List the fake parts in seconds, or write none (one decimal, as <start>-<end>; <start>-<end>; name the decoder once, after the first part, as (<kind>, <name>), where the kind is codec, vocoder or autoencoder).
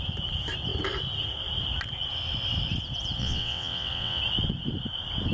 3.2-4.2 (vocoder, WaveNeXt)